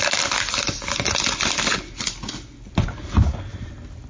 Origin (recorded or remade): recorded